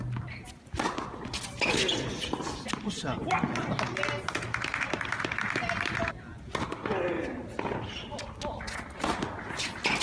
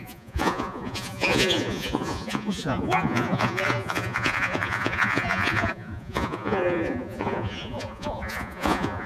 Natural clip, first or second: first